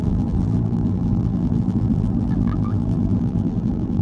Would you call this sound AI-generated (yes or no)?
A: yes